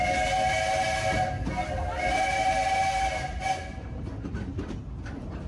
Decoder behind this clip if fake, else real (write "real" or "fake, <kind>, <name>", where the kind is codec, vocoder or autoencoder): real